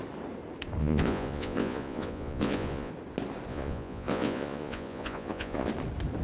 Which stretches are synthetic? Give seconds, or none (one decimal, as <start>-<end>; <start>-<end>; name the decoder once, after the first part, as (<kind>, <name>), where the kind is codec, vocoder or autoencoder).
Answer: 0.8-2.9 (vocoder, Vocos); 3.5-5.7